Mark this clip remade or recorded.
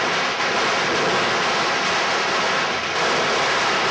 recorded